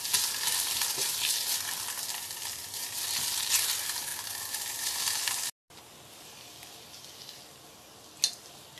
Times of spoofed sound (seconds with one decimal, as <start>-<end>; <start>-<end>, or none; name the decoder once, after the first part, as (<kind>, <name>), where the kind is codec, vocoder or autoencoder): none